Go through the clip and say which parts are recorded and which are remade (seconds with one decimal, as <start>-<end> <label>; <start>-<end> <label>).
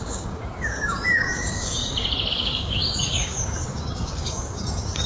0.0-1.8 remade; 1.8-2.3 recorded; 2.3-5.1 remade